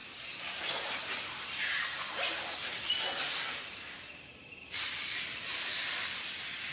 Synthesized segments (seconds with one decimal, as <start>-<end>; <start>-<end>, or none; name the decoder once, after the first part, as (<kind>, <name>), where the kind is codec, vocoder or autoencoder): 0.0-1.1 (vocoder, BigVGAN v2); 2.6-5.8